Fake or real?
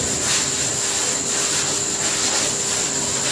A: real